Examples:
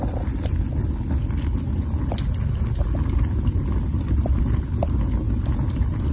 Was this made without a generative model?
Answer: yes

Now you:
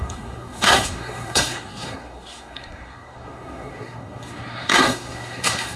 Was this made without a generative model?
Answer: no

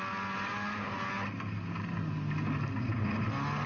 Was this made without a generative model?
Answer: yes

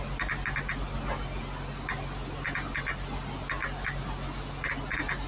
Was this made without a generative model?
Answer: yes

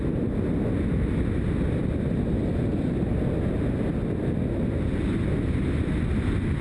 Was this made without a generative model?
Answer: yes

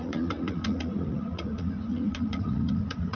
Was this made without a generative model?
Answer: no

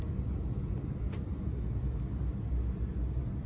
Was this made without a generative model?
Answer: yes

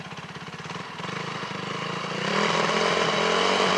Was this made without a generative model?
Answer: yes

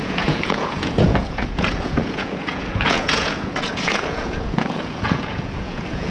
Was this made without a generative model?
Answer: no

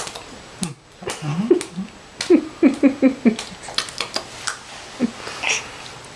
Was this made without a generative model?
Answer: yes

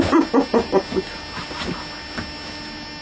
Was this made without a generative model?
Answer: yes